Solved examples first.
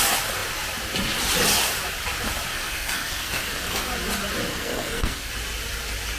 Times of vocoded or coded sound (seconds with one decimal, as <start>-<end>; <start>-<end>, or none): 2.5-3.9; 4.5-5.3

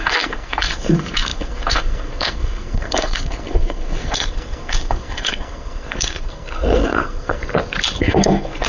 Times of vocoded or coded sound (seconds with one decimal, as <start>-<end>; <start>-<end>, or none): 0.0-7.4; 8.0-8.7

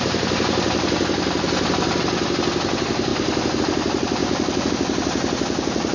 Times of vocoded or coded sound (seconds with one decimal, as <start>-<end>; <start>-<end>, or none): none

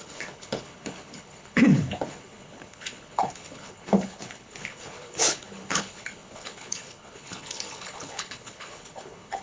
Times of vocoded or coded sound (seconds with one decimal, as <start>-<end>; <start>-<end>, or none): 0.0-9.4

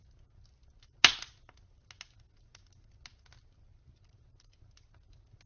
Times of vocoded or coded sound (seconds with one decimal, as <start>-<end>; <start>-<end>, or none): none

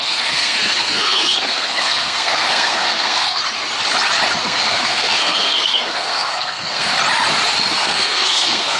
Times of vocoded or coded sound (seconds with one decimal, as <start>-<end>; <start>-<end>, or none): 0.0-3.4; 4.4-6.9; 7.8-8.8